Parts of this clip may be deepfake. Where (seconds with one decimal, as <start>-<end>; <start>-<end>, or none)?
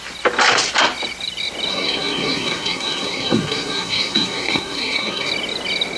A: 1.7-5.3